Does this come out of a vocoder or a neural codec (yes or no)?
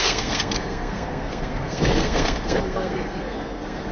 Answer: yes